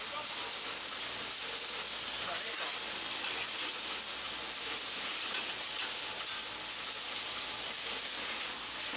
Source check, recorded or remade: recorded